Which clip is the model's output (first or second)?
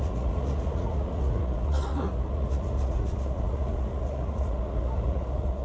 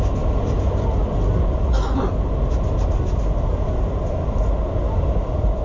first